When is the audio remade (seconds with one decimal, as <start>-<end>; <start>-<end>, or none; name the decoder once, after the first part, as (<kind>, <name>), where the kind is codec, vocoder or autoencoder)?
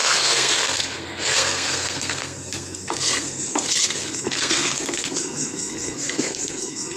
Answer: 0.0-7.0 (codec, SNAC)